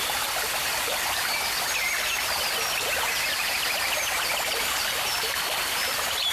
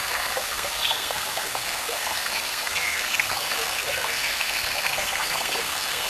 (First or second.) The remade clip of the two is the second